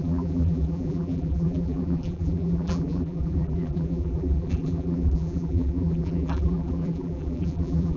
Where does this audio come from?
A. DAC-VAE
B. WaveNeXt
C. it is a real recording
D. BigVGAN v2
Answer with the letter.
D